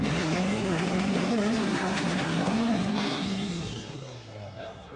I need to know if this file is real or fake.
fake